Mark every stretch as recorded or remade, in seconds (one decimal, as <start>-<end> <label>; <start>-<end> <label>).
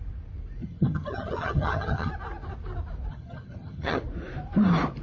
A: 0.0-0.6 recorded; 0.6-2.1 remade; 2.1-3.1 recorded; 3.1-4.0 remade; 4.0-5.0 recorded